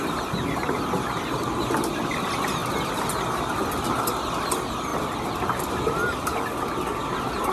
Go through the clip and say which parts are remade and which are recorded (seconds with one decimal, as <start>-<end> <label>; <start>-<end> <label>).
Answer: 0.0-7.5 recorded